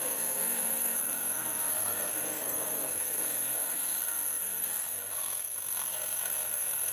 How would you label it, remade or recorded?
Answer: remade